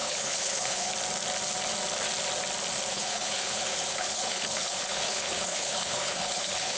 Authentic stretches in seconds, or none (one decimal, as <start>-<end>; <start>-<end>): 0.9-2.9